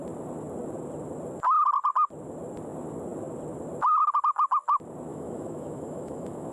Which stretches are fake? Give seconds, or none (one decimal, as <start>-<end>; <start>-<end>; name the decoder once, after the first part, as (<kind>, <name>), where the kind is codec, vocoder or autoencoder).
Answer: 5.1-6.5 (autoencoder, DAC-VAE)